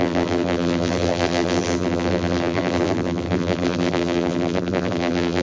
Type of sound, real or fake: fake